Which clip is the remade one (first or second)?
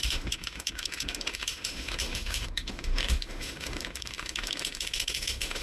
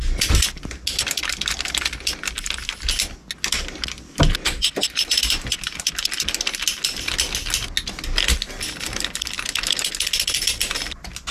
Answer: first